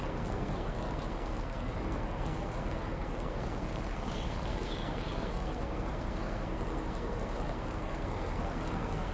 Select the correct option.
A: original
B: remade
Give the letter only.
B